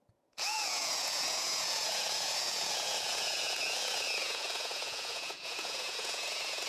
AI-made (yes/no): yes